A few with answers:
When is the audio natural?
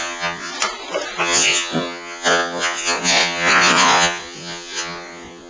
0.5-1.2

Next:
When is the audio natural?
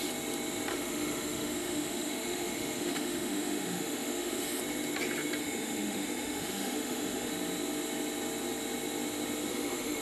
0.0-0.7; 4.6-5.4; 7.3-9.5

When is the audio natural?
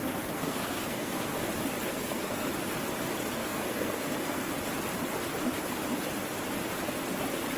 1.5-1.9; 2.5-3.4; 4.5-7.6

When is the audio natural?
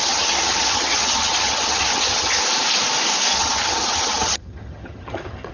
2.4-3.3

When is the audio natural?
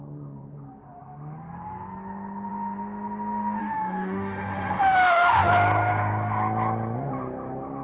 0.0-3.6; 5.5-7.8